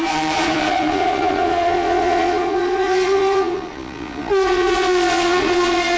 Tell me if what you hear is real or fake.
fake